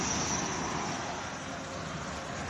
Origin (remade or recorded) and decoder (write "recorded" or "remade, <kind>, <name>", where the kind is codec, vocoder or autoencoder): recorded